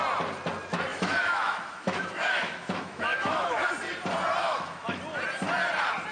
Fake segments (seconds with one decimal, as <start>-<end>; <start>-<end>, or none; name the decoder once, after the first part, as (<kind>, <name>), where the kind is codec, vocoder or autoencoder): 0.9-3.7 (autoencoder, DAC-VAE); 4.4-5.0